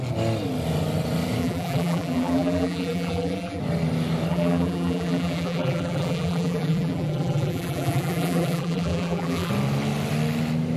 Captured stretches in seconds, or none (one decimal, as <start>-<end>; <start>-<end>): 0.0-1.4; 3.6-4.3; 9.5-10.8